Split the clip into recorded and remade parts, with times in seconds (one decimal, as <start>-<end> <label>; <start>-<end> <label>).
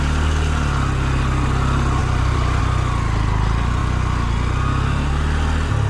0.0-2.0 recorded; 2.0-2.6 remade; 2.6-5.9 recorded